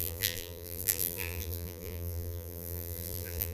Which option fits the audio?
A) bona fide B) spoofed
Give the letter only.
B